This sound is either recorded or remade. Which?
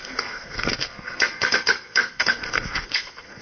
remade